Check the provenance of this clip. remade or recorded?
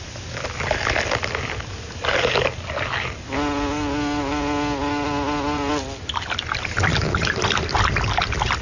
recorded